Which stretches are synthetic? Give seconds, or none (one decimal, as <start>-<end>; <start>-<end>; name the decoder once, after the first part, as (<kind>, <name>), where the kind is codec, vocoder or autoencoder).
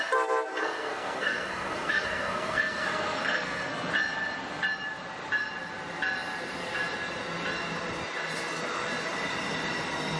0.5-3.9 (codec, SNAC)